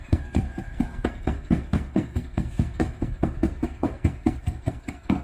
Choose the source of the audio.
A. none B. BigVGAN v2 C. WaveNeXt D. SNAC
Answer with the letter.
D